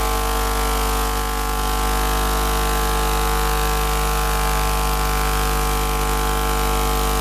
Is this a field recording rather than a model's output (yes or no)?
yes